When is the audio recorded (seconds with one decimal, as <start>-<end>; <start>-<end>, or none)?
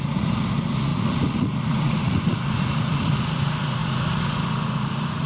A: none